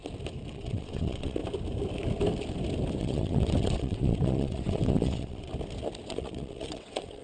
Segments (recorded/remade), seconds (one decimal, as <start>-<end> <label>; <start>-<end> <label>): 0.0-0.5 recorded; 0.5-1.4 remade; 1.4-3.0 recorded; 3.0-5.5 remade; 5.5-6.1 recorded; 6.1-7.2 remade